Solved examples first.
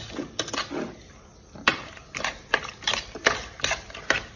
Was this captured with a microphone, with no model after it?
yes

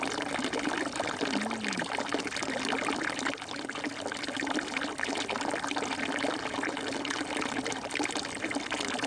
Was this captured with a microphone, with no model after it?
yes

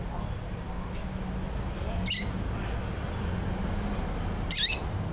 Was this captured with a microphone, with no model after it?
yes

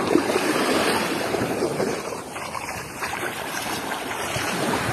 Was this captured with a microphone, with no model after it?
no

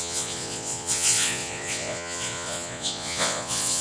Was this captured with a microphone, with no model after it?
no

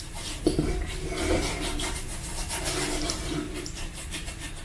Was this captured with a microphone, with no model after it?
yes